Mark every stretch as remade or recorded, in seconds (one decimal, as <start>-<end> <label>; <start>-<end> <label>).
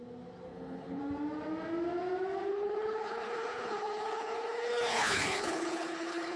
0.0-0.5 recorded; 0.5-1.0 remade; 1.0-2.5 recorded; 2.5-6.4 remade